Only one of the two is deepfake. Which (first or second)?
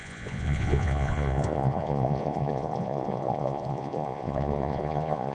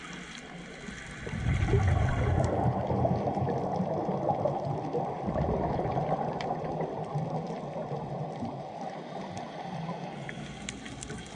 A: first